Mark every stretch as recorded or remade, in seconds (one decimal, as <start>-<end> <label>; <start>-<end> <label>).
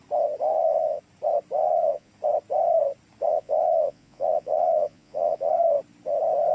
0.0-0.5 recorded; 0.5-1.0 remade; 1.0-1.6 recorded; 1.6-2.1 remade; 2.1-3.3 recorded; 3.3-5.5 remade; 5.5-6.5 recorded